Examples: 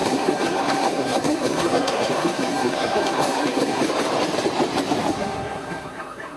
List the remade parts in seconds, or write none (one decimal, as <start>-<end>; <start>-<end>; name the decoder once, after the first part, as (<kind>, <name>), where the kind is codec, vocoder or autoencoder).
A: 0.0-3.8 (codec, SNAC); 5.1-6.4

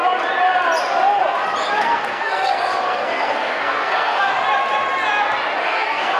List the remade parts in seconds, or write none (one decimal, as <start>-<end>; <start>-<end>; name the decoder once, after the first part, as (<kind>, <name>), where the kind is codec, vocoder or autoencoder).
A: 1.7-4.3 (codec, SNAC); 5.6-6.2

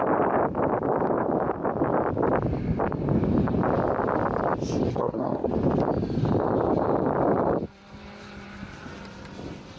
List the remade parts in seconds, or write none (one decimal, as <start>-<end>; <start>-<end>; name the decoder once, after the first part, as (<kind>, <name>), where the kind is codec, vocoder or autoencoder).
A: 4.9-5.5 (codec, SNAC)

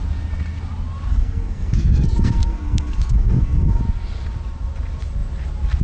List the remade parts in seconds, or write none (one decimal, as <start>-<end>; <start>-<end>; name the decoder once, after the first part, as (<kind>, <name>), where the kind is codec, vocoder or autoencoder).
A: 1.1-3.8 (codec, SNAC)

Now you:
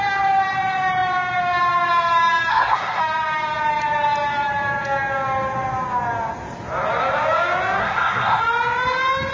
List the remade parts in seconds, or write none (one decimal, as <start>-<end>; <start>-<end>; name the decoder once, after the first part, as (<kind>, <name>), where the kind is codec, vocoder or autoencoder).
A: 2.5-3.0 (codec, SNAC); 7.8-8.4

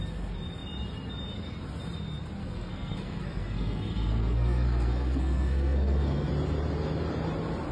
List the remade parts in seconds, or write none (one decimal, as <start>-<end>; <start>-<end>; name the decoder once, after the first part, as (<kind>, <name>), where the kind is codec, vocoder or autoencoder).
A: 2.4-6.3 (codec, SNAC)